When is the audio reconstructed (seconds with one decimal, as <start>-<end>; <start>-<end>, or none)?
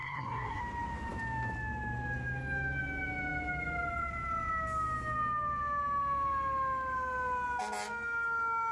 0.0-0.6